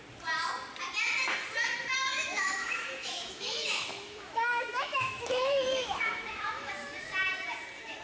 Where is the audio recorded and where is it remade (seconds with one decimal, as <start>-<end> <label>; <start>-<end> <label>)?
0.0-2.1 recorded; 2.1-6.7 remade; 6.7-8.0 recorded